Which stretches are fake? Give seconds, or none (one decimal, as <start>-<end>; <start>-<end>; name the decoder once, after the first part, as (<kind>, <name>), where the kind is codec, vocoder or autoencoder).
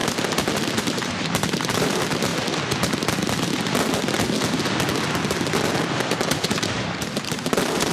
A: 0.8-2.3 (vocoder, BigVGAN v2); 6.1-7.9